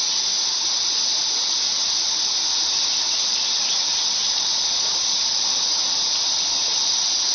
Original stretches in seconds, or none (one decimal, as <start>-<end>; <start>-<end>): 0.0-7.3

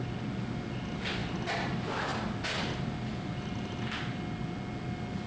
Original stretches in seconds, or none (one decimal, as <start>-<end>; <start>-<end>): 0.0-5.3

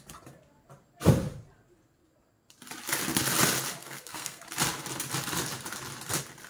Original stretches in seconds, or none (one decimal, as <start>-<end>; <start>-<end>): 0.0-3.8; 4.4-6.5

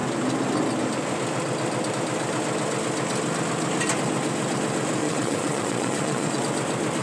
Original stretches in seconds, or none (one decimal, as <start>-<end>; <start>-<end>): 0.0-5.0; 6.4-7.0

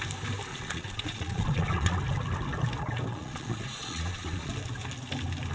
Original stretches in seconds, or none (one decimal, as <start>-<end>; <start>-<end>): 0.0-0.5; 2.0-3.1; 4.5-5.5

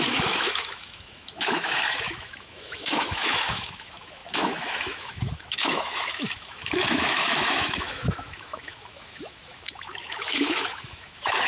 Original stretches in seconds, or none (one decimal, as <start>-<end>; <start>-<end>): none

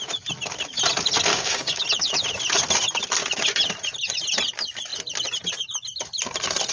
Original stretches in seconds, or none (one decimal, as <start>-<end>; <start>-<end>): 0.0-1.3; 1.8-6.7

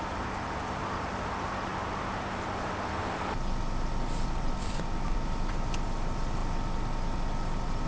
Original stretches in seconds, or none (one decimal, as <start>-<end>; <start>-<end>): 0.0-7.9